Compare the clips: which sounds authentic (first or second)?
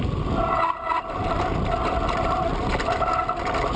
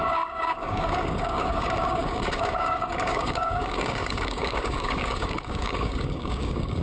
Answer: first